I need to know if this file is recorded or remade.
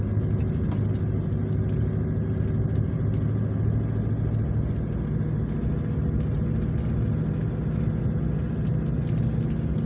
recorded